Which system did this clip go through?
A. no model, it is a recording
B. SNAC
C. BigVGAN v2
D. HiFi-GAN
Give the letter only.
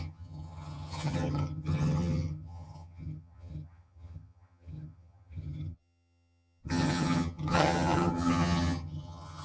D